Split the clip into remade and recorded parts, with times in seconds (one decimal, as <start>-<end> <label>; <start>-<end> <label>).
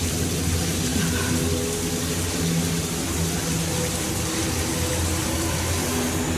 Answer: 0.0-6.4 recorded